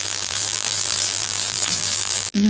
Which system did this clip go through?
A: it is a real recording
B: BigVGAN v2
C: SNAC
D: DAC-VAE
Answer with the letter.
B